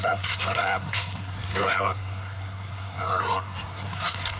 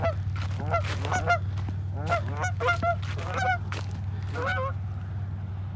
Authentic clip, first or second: second